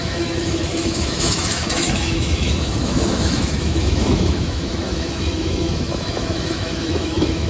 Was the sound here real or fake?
fake